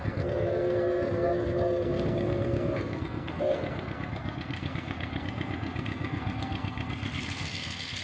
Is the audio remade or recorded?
remade